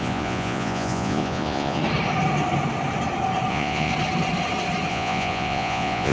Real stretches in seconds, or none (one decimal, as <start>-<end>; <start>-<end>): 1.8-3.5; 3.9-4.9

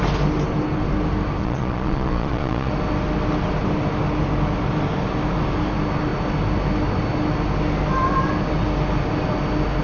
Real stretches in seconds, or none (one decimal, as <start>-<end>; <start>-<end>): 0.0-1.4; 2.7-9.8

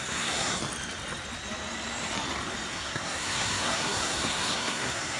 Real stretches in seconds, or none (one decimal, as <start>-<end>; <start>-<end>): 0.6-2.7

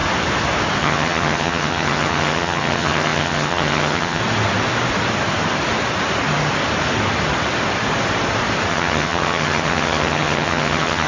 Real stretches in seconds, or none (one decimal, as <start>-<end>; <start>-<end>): 0.0-0.8; 4.2-8.7

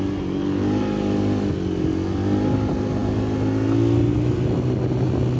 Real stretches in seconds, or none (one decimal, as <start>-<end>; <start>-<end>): 0.0-5.4

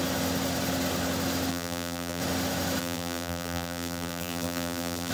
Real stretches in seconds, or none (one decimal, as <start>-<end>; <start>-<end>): 0.0-1.5; 2.2-2.8

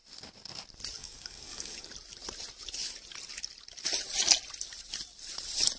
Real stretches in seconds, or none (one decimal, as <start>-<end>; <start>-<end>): 0.0-1.0; 1.9-5.8